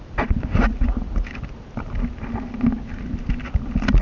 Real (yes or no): yes